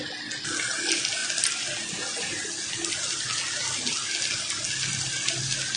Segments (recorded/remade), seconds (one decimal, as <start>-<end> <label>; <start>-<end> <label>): 0.0-5.8 recorded